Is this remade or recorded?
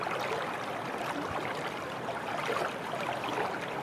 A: recorded